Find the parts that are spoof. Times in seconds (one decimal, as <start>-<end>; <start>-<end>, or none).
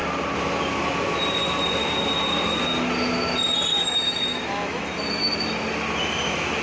3.7-5.6